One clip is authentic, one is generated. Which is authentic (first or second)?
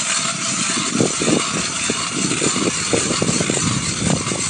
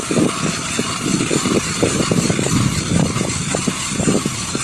first